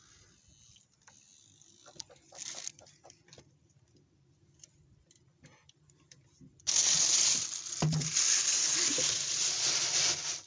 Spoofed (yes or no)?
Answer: no